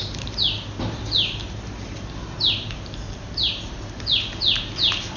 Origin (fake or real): real